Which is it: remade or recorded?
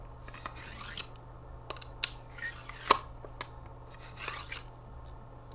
recorded